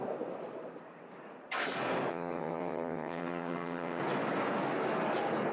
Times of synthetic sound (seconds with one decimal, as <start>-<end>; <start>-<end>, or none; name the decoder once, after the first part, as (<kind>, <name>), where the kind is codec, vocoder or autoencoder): 2.1-4.0 (vocoder, HiFi-GAN)